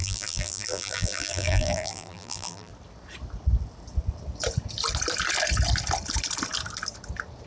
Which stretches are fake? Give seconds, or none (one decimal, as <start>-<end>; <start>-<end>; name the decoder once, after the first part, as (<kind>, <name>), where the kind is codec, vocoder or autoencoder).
0.0-2.7 (vocoder, BigVGAN v2)